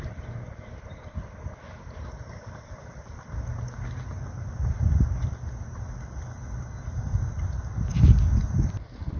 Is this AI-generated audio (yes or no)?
no